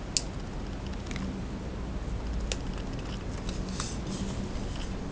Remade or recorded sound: recorded